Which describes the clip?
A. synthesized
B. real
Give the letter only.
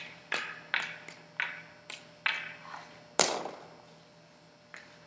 B